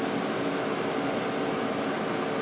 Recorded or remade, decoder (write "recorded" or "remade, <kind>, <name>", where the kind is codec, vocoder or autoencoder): recorded